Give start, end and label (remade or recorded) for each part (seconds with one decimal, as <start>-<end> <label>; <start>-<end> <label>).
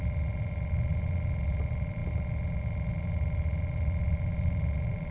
0.0-5.1 recorded